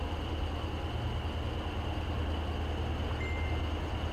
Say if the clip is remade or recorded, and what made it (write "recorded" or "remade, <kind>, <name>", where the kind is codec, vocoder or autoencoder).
recorded